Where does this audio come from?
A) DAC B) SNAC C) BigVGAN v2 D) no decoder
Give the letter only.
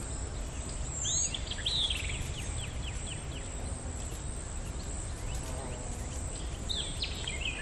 D